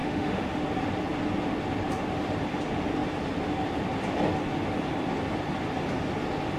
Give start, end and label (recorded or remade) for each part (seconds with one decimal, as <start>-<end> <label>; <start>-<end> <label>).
0.0-0.6 remade; 0.6-6.6 recorded